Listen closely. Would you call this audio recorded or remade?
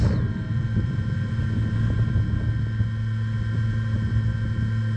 recorded